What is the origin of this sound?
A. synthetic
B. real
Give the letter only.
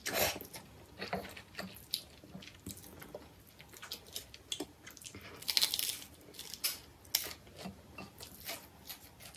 B